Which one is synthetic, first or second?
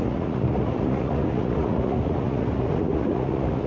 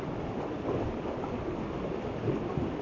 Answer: first